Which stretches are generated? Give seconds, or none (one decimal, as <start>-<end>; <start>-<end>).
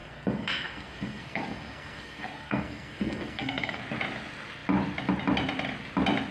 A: 0.0-3.8